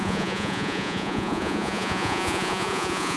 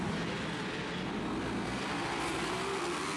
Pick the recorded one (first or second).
second